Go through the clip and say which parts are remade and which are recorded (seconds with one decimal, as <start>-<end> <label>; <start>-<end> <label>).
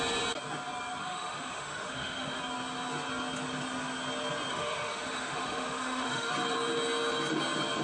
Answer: 0.0-1.0 recorded; 1.0-2.4 remade; 2.4-4.5 recorded; 4.5-6.3 remade; 6.3-7.8 recorded